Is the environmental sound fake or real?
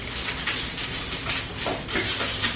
real